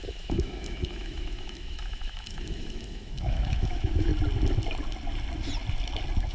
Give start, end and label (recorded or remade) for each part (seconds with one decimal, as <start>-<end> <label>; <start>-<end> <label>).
0.0-4.1 remade; 4.1-6.3 recorded